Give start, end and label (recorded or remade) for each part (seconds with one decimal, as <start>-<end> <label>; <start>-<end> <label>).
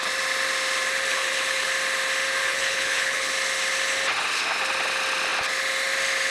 0.0-1.1 recorded; 1.1-1.7 remade; 1.7-2.4 recorded; 2.4-3.3 remade; 3.3-6.3 recorded